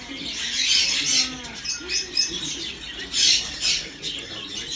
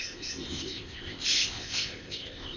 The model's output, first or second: second